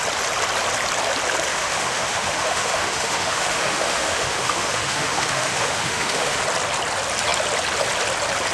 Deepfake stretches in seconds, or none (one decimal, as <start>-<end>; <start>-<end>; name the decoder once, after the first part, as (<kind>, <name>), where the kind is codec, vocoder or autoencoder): 1.5-6.4 (autoencoder, DAC-VAE)